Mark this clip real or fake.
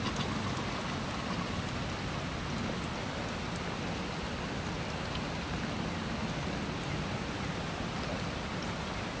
real